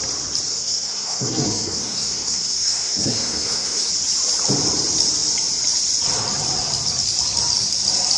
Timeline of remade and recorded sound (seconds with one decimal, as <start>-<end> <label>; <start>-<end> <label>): 0.0-0.5 recorded; 0.5-3.9 remade; 3.9-8.2 recorded